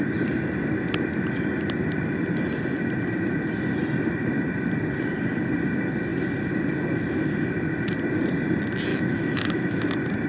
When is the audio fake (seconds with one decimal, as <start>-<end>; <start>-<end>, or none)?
8.9-9.9